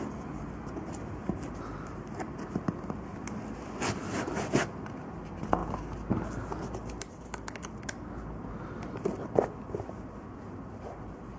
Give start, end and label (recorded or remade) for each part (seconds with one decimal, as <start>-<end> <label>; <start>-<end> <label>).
0.0-11.4 recorded